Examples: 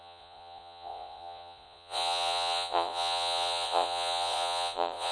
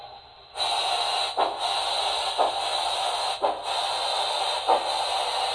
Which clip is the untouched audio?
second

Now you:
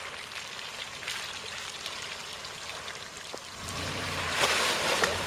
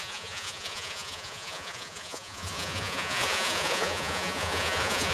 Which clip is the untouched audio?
first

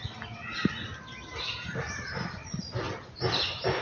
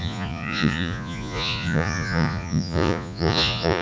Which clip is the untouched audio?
first